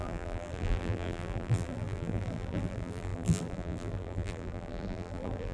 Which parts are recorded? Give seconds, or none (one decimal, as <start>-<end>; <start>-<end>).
none